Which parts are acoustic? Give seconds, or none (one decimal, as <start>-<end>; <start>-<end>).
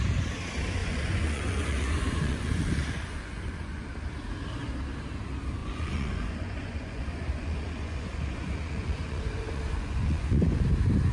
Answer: 0.0-0.8; 3.8-5.6; 10.6-11.1